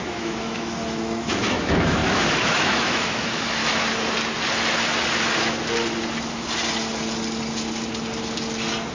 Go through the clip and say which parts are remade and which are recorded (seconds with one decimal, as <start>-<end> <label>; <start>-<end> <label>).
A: 0.0-3.6 remade; 3.6-8.9 recorded